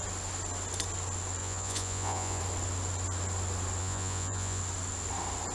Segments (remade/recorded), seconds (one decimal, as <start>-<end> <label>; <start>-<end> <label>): 0.0-1.4 recorded; 1.4-2.4 remade; 2.4-3.8 recorded; 3.8-4.6 remade; 4.6-5.5 recorded